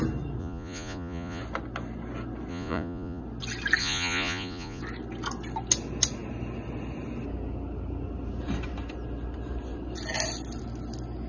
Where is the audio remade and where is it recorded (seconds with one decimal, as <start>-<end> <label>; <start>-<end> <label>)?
0.0-0.4 recorded; 0.4-1.4 remade; 1.4-2.5 recorded; 2.5-3.2 remade; 3.2-3.8 recorded; 3.8-4.8 remade; 4.8-11.3 recorded